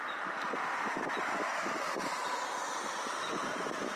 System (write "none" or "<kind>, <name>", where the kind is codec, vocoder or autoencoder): none